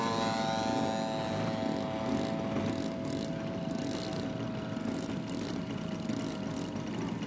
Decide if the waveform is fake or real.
real